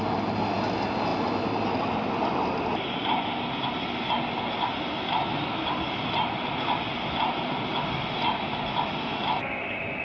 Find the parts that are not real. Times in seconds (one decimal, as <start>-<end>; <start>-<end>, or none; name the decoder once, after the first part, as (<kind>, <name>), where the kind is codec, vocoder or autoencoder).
none